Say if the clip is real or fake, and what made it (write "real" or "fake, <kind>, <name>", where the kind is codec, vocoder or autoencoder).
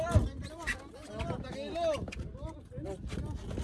real